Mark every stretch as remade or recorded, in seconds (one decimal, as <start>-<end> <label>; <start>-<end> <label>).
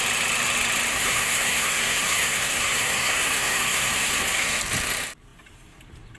0.0-0.9 recorded; 0.9-4.6 remade; 4.6-6.2 recorded